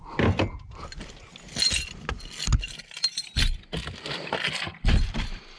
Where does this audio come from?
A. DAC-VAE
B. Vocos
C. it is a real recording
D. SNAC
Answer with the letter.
C